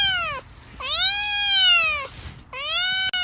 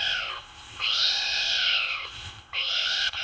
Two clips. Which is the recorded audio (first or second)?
first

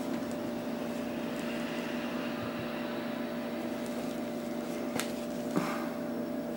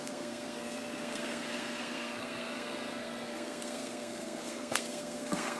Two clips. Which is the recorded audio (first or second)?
first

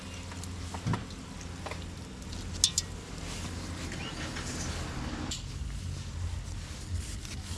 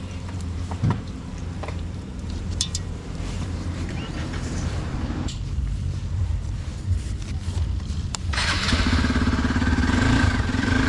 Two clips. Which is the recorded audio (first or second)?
first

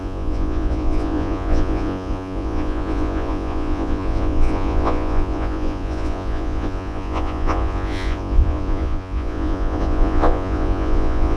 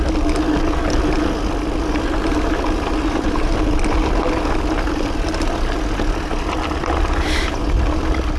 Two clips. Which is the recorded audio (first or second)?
second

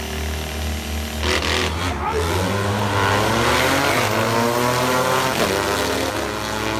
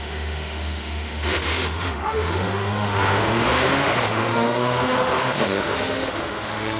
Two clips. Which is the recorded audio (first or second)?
first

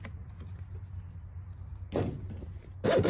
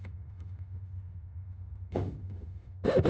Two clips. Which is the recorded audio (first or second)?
first